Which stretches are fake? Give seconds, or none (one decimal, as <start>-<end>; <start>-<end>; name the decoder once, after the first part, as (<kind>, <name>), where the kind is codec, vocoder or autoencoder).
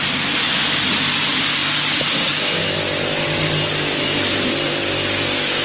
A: none